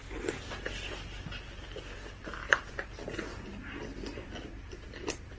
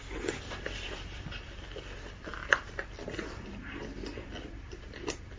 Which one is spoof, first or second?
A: second